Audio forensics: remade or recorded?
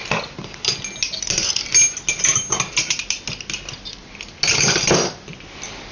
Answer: recorded